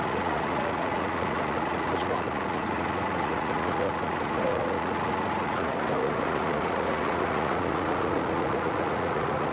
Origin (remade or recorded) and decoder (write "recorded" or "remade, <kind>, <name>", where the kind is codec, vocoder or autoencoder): remade, vocoder, Vocos